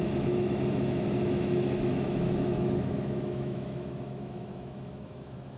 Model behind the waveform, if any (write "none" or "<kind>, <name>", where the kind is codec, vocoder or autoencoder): autoencoder, DAC-VAE